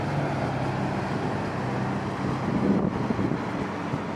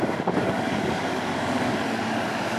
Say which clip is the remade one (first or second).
second